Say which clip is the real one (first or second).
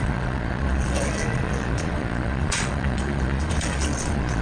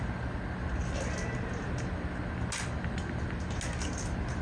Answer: second